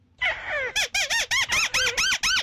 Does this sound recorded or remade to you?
recorded